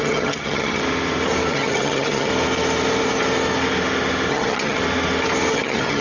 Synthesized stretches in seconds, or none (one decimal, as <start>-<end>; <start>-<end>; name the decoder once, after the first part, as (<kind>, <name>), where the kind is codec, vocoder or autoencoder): 0.0-0.8 (vocoder, HiFi-GAN); 1.5-2.3; 4.3-4.8; 5.5-6.0

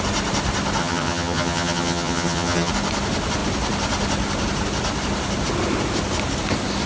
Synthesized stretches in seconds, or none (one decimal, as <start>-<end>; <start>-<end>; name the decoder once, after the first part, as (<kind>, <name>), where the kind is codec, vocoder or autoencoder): 0.8-2.7 (vocoder, HiFi-GAN)

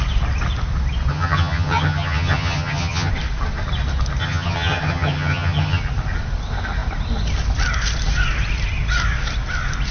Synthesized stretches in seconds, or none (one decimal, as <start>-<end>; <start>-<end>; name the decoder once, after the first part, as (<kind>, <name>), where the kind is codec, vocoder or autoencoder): 1.1-3.1 (vocoder, HiFi-GAN); 4.2-5.8

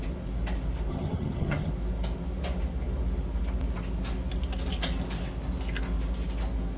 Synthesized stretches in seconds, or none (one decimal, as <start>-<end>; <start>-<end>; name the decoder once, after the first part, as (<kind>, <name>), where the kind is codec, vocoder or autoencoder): 0.9-1.7 (vocoder, HiFi-GAN)

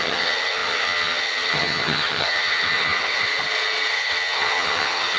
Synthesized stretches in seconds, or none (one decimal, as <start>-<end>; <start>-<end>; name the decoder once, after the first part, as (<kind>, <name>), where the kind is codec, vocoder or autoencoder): 0.0-3.3 (vocoder, HiFi-GAN); 3.9-5.2

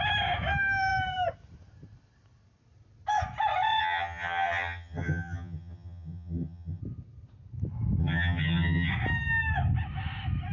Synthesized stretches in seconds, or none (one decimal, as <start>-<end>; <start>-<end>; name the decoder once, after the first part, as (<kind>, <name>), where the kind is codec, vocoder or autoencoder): 3.8-6.8 (vocoder, HiFi-GAN); 8.0-8.9